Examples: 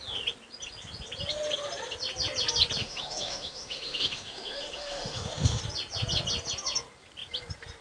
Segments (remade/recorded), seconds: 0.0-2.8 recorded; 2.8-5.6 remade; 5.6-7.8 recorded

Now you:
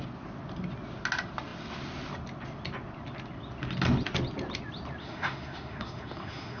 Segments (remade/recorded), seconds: 0.0-5.0 recorded; 5.0-6.6 remade

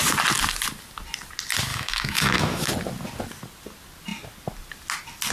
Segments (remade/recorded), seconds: 0.0-1.7 recorded; 1.7-2.7 remade; 2.7-5.3 recorded